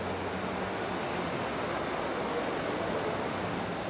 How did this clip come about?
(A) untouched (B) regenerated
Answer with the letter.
A